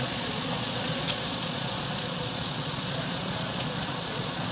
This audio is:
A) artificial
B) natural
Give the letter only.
A